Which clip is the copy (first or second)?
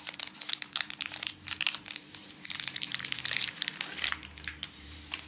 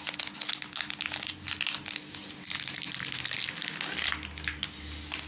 first